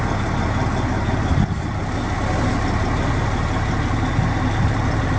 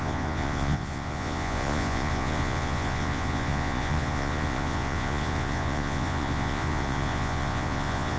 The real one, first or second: first